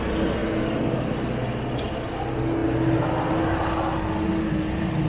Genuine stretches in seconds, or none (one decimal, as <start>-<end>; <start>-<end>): 0.0-5.1